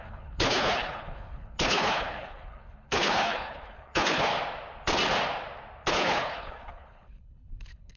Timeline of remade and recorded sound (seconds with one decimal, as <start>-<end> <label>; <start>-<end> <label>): 0.0-4.3 remade; 4.3-5.9 recorded; 5.9-8.0 remade